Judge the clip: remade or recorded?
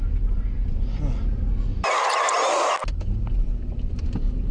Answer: recorded